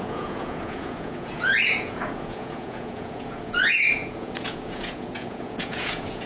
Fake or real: fake